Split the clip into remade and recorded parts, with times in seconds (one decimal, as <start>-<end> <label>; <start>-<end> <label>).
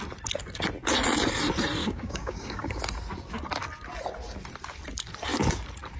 0.0-1.8 recorded; 1.8-2.8 remade; 2.8-6.0 recorded